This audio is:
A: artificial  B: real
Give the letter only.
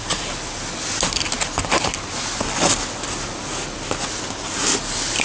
B